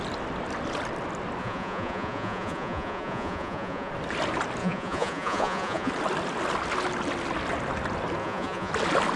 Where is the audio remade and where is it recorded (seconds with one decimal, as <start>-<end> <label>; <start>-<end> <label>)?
0.0-1.4 recorded; 1.4-3.9 remade; 3.9-4.6 recorded; 4.6-5.9 remade; 5.9-8.2 recorded; 8.2-8.7 remade; 8.7-9.2 recorded